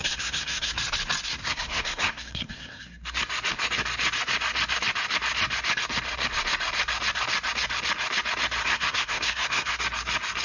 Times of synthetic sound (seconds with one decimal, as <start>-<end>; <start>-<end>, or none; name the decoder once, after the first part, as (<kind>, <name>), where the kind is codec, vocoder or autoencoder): 0.0-0.7 (codec, SNAC); 1.4-3.2; 8.6-9.8